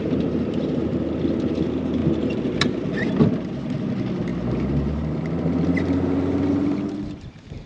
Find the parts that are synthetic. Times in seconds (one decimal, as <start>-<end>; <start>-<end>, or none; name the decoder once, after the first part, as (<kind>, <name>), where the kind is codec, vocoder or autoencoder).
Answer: none